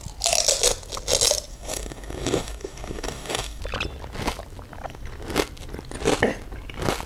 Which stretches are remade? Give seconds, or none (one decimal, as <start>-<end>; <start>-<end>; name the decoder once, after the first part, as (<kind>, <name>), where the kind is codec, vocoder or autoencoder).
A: 1.5-3.6 (codec, DAC)